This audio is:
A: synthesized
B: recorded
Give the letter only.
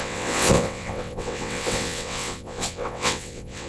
A